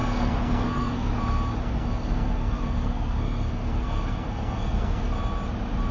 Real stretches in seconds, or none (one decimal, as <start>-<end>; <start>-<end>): 1.1-1.6; 5.1-5.9